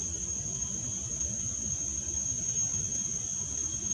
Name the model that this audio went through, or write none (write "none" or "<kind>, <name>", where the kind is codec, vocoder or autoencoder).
none